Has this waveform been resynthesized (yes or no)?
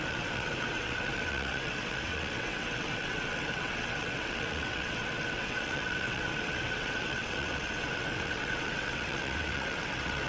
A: yes